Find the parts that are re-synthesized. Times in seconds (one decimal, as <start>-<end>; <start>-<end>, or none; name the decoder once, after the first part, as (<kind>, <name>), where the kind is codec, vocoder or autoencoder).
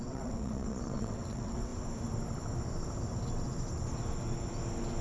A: 0.0-1.7 (vocoder, WaveNeXt)